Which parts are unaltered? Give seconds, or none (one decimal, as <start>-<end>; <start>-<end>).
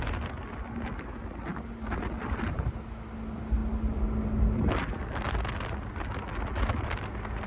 0.0-7.5